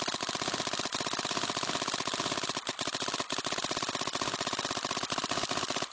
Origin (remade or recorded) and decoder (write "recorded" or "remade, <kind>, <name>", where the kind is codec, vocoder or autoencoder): recorded